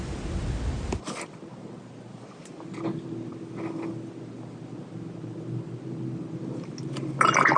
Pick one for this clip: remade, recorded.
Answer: recorded